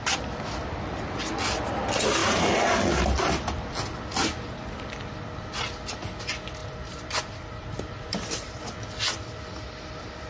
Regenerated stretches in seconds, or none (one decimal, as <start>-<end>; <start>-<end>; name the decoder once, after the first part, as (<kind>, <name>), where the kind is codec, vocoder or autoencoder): 6.6-8.6 (vocoder, BigVGAN v2)